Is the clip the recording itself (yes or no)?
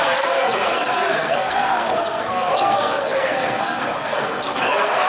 no